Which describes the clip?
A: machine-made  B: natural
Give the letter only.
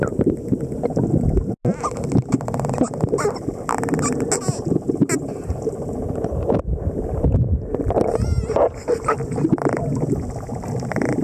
B